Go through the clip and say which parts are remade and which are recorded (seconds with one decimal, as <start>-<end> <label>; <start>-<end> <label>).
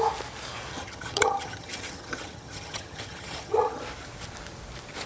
0.0-0.7 recorded; 0.7-3.8 remade; 3.8-5.1 recorded